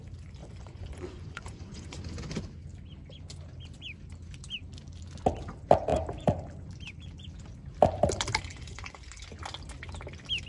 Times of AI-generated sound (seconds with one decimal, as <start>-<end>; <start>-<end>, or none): 0.4-2.0; 8.5-9.1